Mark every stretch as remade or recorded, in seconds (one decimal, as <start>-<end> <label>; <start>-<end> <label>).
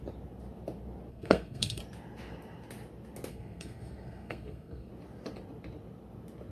0.0-1.1 recorded; 1.1-1.8 remade; 1.8-3.3 recorded; 3.3-4.9 remade; 4.9-6.5 recorded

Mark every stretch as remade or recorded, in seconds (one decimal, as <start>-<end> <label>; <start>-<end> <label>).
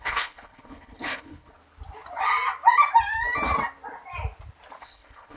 0.0-1.6 remade; 1.6-4.8 recorded; 4.8-5.4 remade